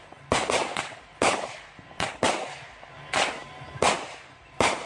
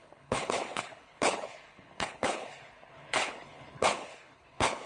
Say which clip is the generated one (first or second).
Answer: second